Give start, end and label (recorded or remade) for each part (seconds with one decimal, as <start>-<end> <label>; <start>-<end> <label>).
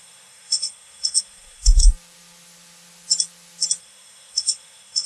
0.0-1.8 remade; 1.8-3.8 recorded; 3.8-5.1 remade